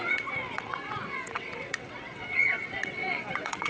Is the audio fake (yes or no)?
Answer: yes